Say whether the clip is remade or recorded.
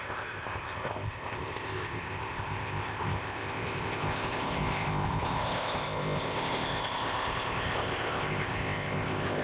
remade